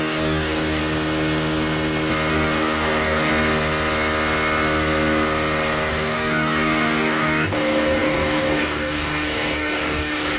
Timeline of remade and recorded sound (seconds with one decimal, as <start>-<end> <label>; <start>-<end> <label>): 0.0-0.8 remade; 0.8-2.3 recorded; 2.3-3.3 remade; 3.3-5.9 recorded; 5.9-10.4 remade